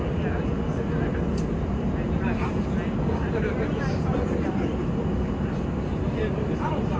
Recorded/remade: recorded